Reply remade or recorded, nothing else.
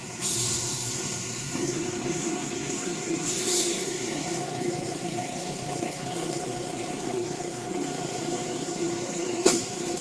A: remade